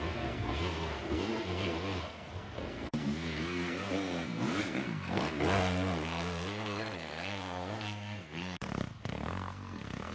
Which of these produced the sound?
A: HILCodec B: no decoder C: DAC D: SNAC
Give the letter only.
D